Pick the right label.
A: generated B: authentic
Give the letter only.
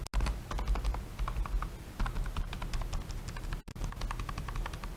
B